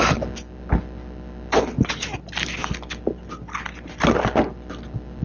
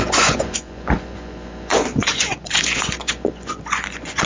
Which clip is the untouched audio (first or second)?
first